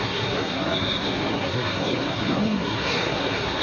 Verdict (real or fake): fake